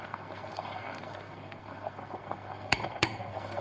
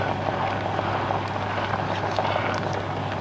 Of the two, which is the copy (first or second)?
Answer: first